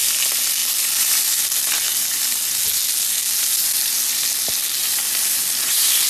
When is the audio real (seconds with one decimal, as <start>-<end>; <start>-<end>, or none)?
0.0-6.1